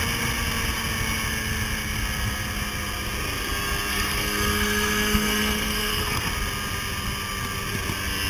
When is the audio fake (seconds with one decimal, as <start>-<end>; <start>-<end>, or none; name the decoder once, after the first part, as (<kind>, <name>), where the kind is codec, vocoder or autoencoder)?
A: 3.9-6.3 (codec, SNAC)